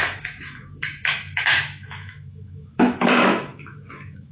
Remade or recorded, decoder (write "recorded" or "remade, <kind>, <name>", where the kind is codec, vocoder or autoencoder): remade, autoencoder, DAC-VAE